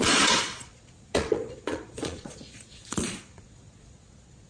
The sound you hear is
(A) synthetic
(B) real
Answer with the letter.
A